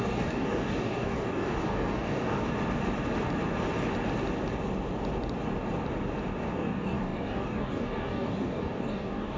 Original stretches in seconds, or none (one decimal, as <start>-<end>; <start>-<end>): 2.4-6.5

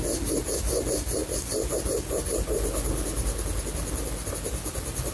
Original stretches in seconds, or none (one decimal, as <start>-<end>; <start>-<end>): 0.0-5.1

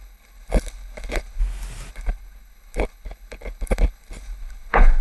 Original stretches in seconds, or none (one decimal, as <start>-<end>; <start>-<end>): 1.4-1.9